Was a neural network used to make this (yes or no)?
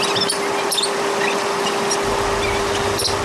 no